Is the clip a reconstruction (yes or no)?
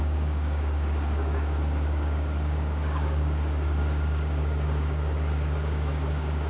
yes